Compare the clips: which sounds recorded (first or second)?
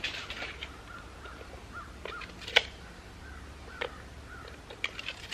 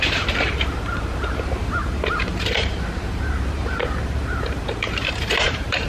first